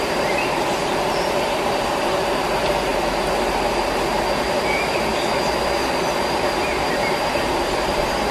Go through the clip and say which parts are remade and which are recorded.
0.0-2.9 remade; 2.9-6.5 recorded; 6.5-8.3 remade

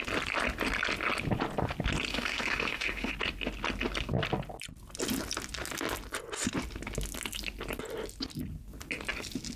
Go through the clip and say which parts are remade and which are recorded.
0.0-2.1 recorded; 2.1-3.1 remade; 3.1-9.6 recorded

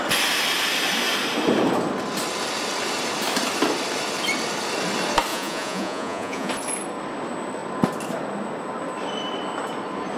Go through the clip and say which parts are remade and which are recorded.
0.0-5.3 recorded; 5.3-6.5 remade; 6.5-10.2 recorded

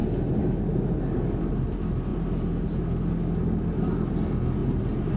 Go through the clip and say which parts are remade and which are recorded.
0.0-4.6 recorded; 4.6-5.2 remade

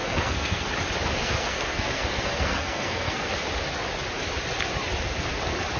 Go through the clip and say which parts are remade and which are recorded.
0.0-0.7 remade; 0.7-1.2 recorded; 1.2-3.3 remade; 3.3-5.8 recorded

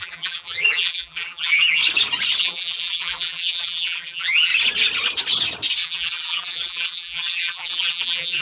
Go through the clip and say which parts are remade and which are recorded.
0.0-1.8 remade; 1.8-2.4 recorded; 2.4-4.5 remade; 4.5-5.8 recorded; 5.8-8.4 remade

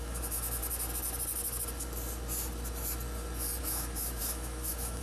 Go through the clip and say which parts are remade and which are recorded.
0.0-0.6 remade; 0.6-3.6 recorded; 3.6-5.0 remade